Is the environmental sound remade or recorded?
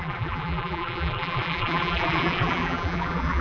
remade